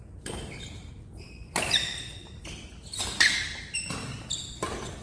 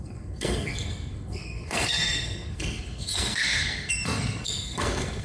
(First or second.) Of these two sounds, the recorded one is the first